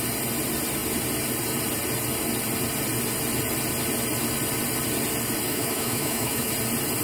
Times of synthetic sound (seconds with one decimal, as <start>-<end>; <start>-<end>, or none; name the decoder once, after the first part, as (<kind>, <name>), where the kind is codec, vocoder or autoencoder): 5.5-6.5 (autoencoder, DAC-VAE)